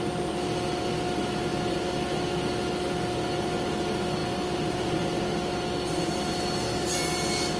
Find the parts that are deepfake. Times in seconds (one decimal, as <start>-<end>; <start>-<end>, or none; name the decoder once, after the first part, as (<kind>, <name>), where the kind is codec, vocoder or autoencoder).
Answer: none